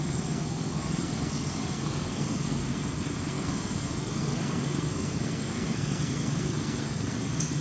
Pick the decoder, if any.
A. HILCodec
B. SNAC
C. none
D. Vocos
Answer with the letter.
B